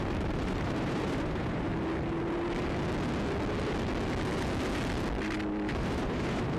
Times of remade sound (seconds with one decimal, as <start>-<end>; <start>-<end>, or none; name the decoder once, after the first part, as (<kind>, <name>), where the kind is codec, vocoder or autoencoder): 0.0-1.7 (vocoder, BigVGAN v2); 5.7-6.6